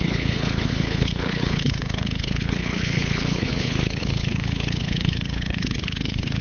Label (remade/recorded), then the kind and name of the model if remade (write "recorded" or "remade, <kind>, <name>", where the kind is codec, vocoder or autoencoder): remade, codec, HILCodec